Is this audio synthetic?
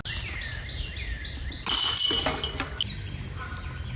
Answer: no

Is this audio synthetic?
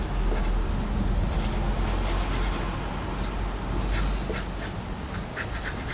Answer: no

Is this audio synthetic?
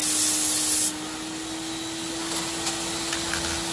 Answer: no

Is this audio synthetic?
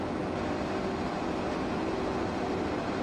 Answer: no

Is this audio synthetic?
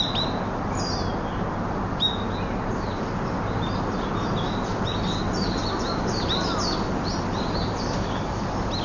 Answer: no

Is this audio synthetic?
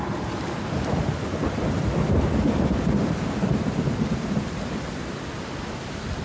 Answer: yes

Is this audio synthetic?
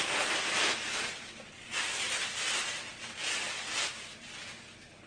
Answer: no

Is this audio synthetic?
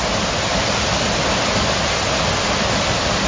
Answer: no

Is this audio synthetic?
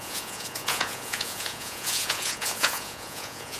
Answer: yes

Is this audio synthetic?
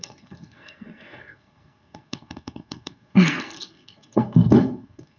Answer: yes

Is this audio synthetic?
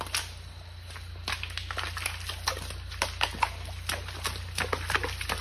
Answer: no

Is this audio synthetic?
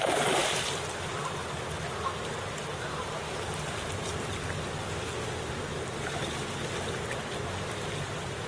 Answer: no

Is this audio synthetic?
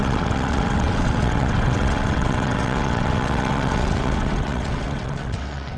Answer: yes